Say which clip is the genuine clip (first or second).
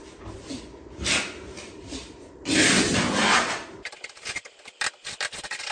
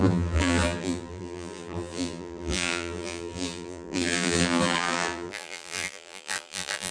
first